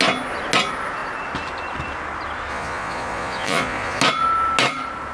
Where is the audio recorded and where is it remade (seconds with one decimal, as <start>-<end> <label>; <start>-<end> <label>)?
0.0-2.5 recorded; 2.5-4.0 remade; 4.0-5.1 recorded